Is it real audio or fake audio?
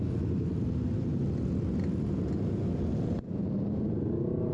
real